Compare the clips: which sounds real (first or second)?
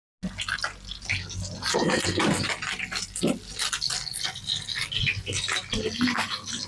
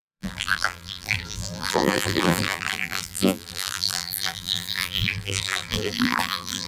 first